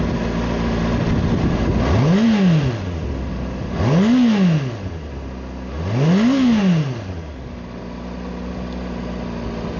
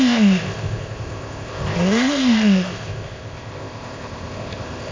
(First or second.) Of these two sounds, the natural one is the first